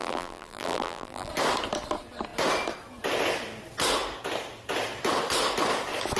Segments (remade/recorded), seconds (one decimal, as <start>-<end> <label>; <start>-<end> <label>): 0.0-1.3 remade; 1.3-6.2 recorded